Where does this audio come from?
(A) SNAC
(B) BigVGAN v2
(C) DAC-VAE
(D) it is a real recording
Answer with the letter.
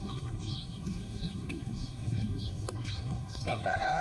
A